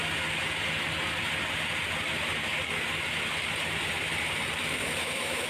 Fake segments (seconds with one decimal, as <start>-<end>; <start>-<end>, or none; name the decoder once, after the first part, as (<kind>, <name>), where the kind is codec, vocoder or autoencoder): 4.8-5.5 (autoencoder, DAC-VAE)

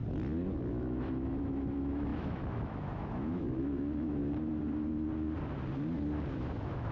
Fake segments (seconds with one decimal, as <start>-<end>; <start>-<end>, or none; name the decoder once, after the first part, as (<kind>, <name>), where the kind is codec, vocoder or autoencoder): 0.7-4.2 (autoencoder, DAC-VAE); 6.3-6.9